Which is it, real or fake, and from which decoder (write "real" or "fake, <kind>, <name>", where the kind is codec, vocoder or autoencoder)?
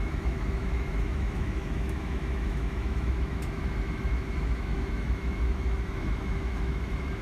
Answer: fake, autoencoder, DAC-VAE